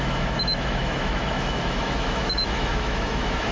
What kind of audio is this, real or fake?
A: fake